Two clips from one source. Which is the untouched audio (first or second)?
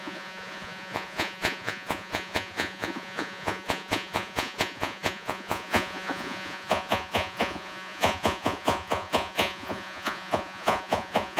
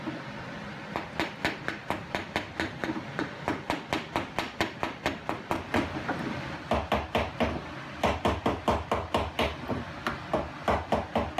second